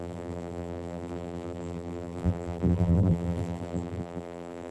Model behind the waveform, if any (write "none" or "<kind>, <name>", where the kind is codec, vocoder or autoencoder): vocoder, BigVGAN v2